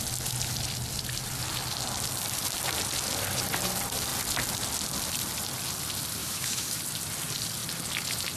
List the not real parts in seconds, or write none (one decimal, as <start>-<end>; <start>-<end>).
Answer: 6.2-6.8